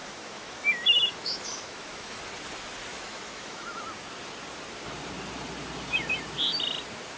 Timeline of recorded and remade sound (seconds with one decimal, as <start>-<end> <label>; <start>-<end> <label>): 0.0-2.2 remade; 2.2-2.9 recorded; 2.9-3.8 remade; 3.8-7.2 recorded